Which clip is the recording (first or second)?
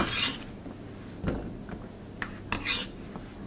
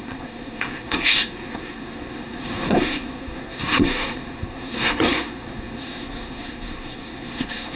first